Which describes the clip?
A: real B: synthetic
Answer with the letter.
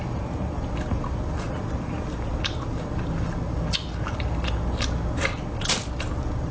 A